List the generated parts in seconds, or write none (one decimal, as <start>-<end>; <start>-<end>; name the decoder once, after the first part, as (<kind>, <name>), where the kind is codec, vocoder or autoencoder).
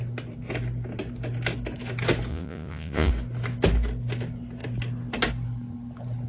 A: 2.3-3.1 (vocoder, Vocos)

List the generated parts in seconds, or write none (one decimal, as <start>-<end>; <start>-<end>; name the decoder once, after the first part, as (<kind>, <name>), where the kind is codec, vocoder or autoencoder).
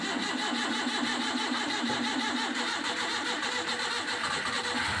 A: 0.7-3.7 (vocoder, BigVGAN v2)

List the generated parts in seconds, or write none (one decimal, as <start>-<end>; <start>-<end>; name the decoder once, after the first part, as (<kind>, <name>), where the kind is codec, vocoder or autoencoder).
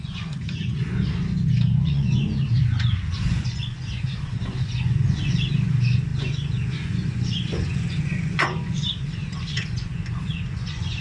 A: 0.0-11.0 (vocoder, Vocos)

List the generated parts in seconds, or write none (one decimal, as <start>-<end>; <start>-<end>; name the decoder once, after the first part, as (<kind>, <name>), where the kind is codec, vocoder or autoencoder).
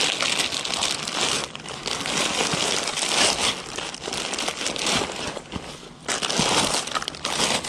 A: none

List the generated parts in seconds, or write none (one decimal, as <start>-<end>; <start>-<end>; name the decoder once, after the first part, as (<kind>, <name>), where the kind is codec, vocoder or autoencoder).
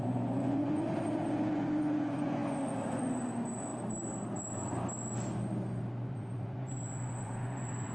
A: 0.0-3.7 (vocoder, Vocos); 5.9-7.9